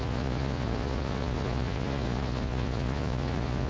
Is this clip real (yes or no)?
no